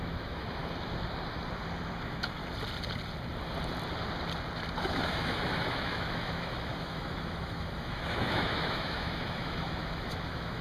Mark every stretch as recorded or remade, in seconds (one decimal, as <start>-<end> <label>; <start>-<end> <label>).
0.0-0.6 remade; 0.6-1.9 recorded; 1.9-2.4 remade; 2.4-4.8 recorded; 4.8-10.6 remade